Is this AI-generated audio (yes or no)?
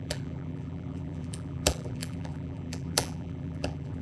yes